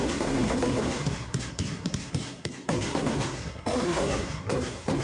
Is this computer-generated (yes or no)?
yes